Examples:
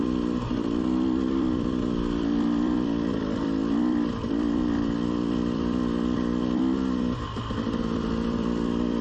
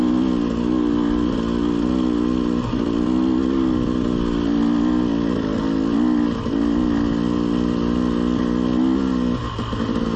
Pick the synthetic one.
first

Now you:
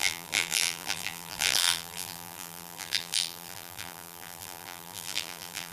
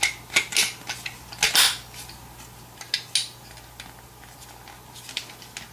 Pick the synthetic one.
first